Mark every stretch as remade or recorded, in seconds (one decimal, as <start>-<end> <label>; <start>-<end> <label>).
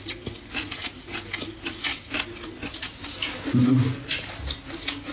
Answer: 0.0-5.1 recorded